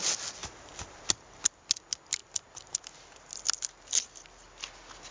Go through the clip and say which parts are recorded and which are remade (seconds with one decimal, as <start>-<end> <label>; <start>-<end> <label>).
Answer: 0.0-0.4 recorded; 0.4-1.4 remade; 1.4-5.1 recorded